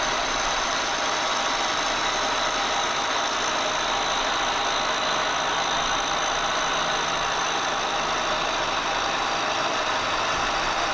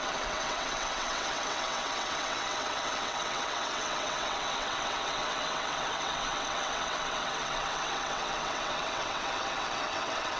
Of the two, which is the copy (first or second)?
second